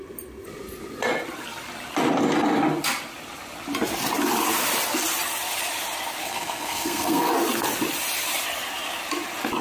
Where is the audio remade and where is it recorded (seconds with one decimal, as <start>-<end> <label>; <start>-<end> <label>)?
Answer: 0.0-6.2 recorded; 6.2-7.3 remade; 7.3-9.6 recorded